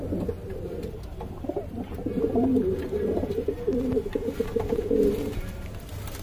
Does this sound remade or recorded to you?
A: recorded